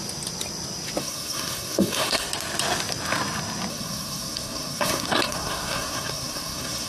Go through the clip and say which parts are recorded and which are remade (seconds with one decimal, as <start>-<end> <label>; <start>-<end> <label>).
0.0-1.0 recorded; 1.0-2.3 remade; 2.3-3.7 recorded; 3.7-6.9 remade